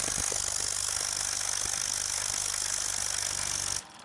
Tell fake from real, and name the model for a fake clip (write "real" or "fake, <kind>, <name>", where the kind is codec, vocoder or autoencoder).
real